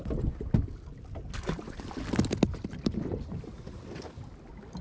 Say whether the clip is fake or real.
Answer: real